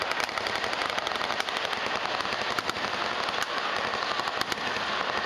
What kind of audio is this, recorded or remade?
recorded